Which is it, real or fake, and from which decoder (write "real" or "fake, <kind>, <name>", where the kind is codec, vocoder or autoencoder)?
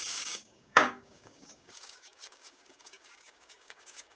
fake, codec, DAC